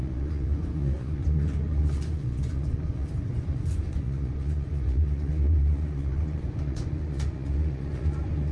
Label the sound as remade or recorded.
remade